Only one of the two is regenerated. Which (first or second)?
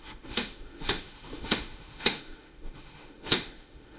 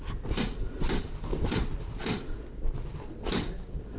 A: first